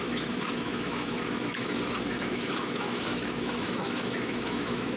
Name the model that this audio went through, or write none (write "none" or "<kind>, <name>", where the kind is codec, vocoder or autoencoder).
autoencoder, DAC-VAE